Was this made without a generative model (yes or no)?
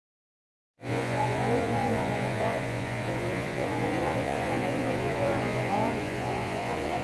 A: no